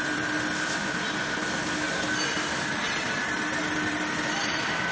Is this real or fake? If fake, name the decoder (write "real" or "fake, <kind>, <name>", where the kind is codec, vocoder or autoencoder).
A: real